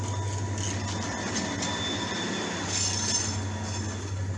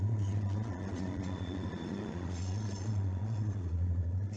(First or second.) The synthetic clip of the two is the second